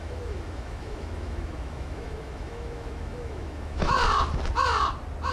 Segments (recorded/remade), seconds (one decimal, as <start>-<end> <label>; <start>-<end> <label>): 0.0-4.0 remade; 4.0-5.3 recorded